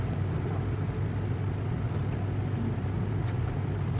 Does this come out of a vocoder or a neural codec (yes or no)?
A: no